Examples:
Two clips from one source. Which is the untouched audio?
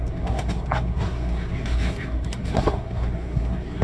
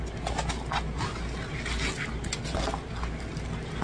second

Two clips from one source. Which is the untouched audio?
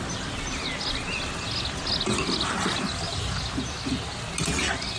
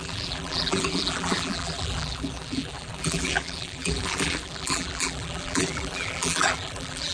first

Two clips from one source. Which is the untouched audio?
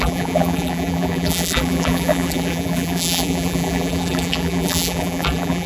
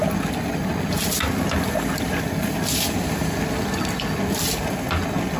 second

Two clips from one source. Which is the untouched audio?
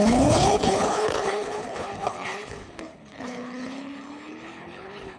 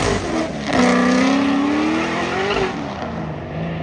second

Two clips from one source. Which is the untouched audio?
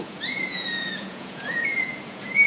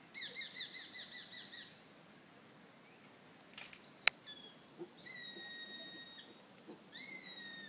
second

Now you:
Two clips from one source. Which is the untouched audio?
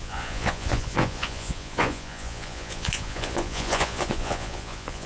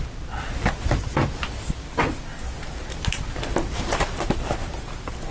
second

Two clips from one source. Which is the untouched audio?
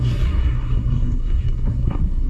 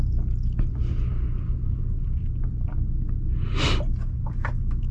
second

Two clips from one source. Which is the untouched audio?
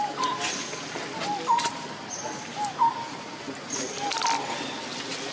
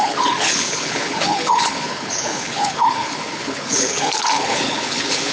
first